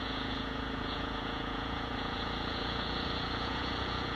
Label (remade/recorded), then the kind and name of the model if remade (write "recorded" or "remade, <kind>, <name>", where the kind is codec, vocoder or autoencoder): remade, vocoder, Vocos